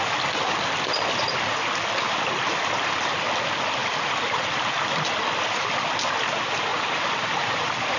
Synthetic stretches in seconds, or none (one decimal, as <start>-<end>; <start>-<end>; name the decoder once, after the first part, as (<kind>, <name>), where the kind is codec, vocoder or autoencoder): 3.8-4.4 (vocoder, BigVGAN v2); 6.7-8.0